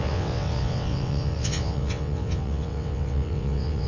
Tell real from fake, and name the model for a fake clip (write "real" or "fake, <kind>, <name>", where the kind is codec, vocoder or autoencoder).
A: fake, vocoder, WaveNeXt